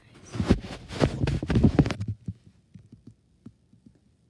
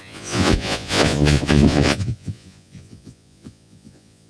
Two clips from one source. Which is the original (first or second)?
first